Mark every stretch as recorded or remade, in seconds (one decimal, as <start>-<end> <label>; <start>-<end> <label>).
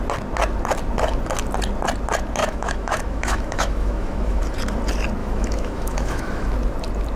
0.0-2.4 recorded; 2.4-4.4 remade; 4.4-5.2 recorded; 5.2-6.5 remade; 6.5-7.2 recorded